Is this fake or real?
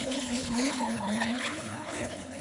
fake